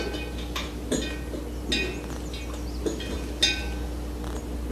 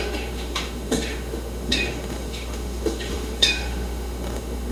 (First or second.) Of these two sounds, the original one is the first